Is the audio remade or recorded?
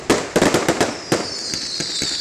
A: recorded